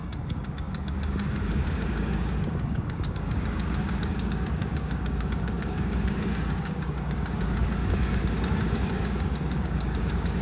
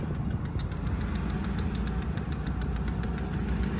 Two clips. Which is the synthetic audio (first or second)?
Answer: first